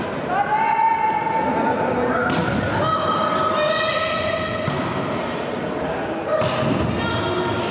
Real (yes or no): yes